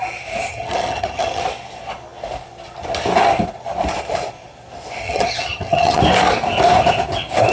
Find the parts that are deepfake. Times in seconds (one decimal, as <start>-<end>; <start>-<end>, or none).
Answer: 0.5-1.4; 5.0-6.0